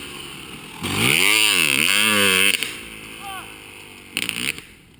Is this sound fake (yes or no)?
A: no